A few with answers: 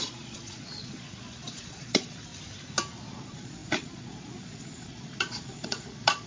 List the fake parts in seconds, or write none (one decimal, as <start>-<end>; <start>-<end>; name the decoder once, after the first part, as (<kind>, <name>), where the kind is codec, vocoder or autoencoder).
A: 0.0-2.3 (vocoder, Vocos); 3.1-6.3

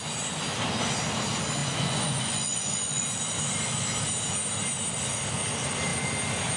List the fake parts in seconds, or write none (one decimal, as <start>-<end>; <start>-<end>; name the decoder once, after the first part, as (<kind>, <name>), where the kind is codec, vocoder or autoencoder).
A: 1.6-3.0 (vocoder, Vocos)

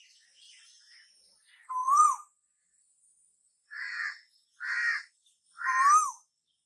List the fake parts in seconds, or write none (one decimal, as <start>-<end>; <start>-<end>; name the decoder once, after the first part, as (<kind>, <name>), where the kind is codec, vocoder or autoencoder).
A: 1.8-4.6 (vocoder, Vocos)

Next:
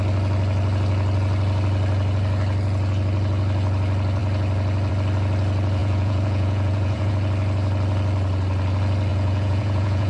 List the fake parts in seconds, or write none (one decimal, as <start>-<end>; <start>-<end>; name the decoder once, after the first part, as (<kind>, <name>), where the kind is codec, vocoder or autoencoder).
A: 5.8-7.1 (vocoder, Vocos); 9.1-10.1